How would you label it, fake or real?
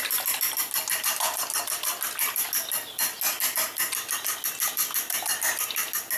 real